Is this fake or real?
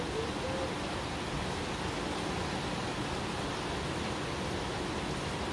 real